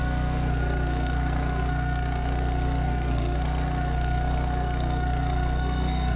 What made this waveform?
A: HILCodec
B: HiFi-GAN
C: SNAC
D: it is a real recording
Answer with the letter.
C